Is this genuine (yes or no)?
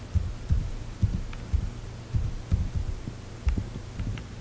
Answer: yes